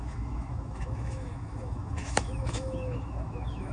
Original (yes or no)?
no